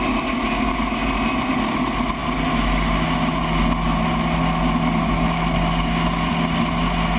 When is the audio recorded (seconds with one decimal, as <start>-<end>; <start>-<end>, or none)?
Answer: 0.0-7.2